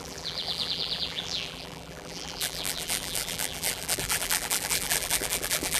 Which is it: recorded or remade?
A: remade